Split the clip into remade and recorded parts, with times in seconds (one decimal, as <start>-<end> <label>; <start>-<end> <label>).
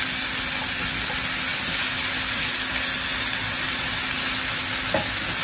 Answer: 0.0-5.4 recorded